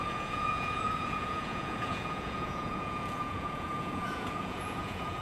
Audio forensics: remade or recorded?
remade